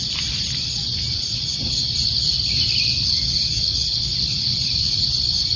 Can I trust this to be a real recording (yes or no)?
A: yes